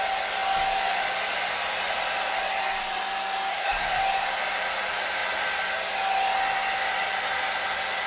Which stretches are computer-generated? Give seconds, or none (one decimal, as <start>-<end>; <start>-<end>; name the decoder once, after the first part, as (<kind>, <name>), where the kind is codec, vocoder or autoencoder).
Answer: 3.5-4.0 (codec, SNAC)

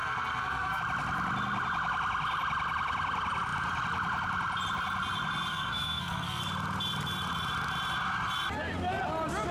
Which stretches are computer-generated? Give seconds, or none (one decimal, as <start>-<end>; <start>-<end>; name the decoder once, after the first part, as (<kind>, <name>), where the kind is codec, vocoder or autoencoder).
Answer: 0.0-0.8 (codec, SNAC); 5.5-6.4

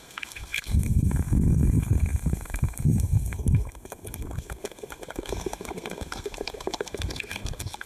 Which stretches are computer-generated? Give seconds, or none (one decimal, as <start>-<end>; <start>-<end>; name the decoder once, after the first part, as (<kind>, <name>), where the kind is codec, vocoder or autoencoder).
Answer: 0.0-7.9 (codec, SNAC)